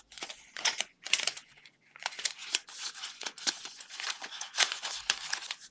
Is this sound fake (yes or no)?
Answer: yes